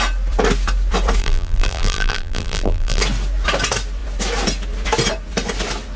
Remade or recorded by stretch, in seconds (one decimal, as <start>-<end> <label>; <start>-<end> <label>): 0.0-1.2 recorded; 1.2-3.0 remade; 3.0-6.0 recorded